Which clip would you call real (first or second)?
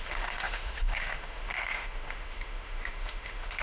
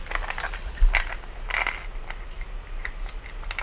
second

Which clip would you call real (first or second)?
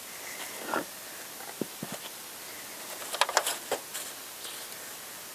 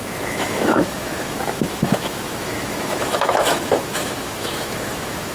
first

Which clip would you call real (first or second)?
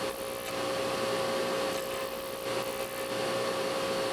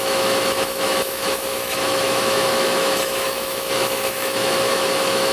first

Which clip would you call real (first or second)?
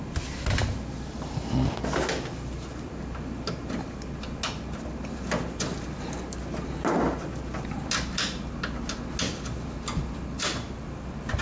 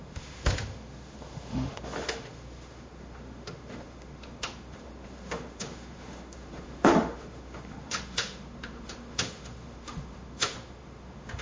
first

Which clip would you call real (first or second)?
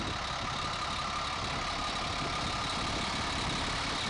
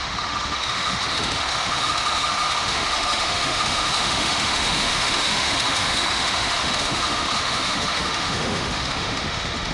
first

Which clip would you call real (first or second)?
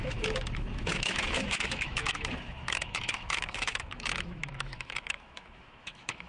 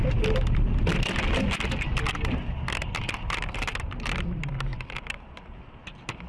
second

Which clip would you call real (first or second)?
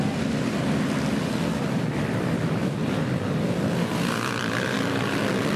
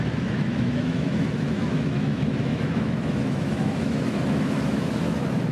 first